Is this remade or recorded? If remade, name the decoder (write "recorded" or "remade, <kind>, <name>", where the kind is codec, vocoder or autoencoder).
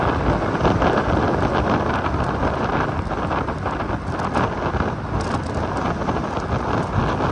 recorded